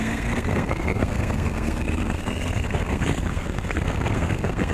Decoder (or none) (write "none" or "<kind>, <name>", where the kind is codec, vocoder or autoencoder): codec, SNAC